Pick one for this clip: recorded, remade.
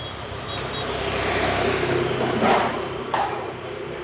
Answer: recorded